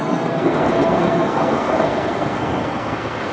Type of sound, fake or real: fake